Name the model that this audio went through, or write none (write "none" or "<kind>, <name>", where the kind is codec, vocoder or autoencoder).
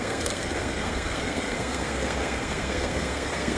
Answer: codec, SNAC